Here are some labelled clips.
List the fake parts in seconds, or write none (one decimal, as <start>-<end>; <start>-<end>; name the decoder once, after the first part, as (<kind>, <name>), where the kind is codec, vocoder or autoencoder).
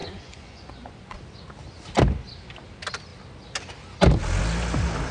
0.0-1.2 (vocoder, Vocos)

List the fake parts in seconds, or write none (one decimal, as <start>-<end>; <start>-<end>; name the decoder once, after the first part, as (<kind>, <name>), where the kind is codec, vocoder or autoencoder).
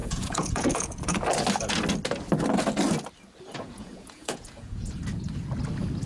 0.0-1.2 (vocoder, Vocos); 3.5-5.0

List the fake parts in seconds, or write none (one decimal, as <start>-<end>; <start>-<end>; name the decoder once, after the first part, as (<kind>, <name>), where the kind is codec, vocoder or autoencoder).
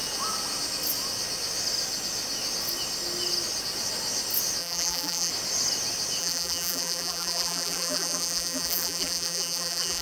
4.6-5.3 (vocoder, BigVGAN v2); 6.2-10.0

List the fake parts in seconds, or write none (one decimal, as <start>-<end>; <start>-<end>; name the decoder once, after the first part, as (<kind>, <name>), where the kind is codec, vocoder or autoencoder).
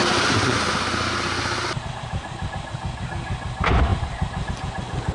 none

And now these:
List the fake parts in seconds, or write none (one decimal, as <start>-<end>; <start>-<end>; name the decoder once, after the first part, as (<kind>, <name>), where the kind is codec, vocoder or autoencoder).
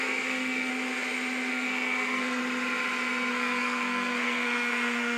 0.0-0.7 (codec, SNAC); 1.5-2.4; 3.3-5.2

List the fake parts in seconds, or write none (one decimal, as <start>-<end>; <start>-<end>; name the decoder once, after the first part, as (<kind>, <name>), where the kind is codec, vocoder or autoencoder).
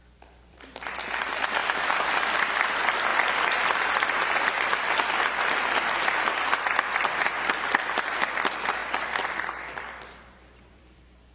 0.0-11.3 (vocoder, BigVGAN v2)